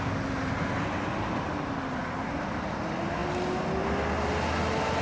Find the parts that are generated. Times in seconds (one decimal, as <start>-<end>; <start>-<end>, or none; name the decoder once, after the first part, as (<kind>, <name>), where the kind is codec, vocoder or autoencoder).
none